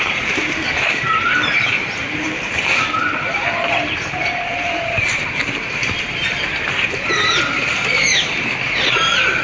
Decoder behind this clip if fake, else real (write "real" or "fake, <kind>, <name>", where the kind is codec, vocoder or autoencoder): fake, vocoder, BigVGAN v2